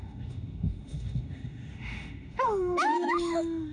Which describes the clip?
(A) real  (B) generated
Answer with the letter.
B